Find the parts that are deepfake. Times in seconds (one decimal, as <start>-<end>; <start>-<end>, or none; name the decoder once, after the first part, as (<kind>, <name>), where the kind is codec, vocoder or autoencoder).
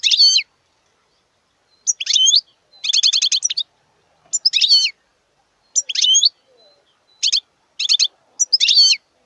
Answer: none